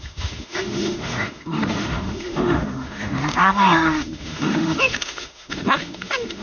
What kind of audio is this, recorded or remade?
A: remade